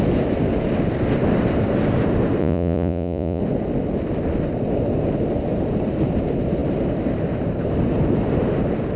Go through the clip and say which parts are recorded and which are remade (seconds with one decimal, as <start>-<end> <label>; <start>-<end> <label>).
0.0-2.4 recorded; 2.4-3.4 remade; 3.4-9.0 recorded